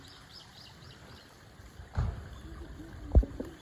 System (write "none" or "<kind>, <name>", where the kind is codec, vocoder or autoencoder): vocoder, BigVGAN v2